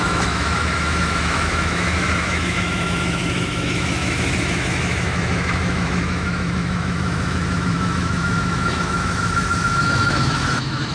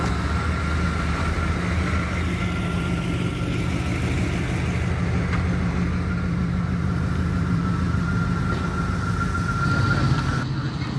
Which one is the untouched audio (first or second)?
second